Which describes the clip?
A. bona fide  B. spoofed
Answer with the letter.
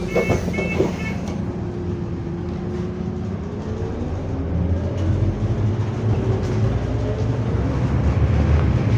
A